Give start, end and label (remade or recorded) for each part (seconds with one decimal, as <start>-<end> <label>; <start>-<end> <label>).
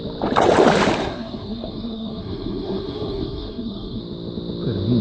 0.0-1.0 recorded; 1.0-4.0 remade; 4.0-5.0 recorded